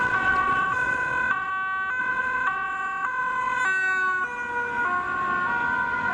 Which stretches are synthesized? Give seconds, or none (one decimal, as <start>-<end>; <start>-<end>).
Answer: 0.0-1.5; 2.0-3.6